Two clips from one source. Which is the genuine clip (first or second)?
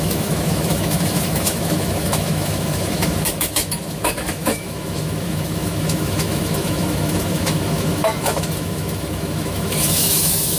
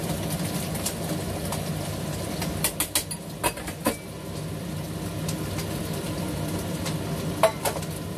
second